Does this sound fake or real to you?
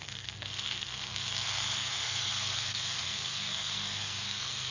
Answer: fake